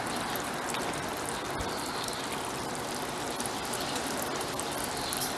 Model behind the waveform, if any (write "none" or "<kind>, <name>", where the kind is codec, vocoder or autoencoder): none